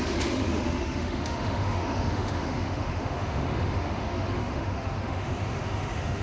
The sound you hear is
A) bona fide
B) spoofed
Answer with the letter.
B